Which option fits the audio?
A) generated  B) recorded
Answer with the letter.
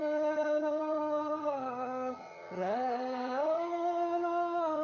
A